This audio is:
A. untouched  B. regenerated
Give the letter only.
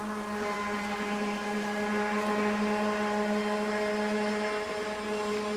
A